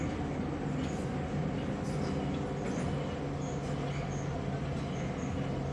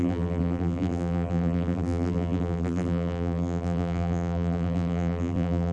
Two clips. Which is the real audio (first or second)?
first